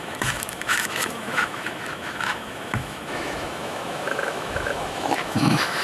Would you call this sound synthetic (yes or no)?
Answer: yes